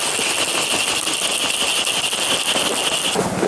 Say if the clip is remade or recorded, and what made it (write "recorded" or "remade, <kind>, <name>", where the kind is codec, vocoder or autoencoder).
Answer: recorded